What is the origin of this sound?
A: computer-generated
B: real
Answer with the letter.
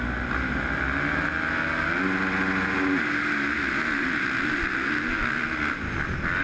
B